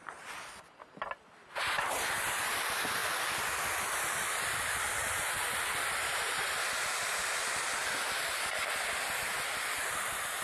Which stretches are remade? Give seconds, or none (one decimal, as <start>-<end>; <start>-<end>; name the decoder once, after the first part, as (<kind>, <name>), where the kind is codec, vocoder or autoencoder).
none